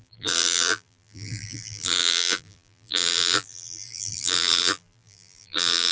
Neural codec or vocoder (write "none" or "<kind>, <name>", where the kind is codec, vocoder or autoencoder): vocoder, BigVGAN v2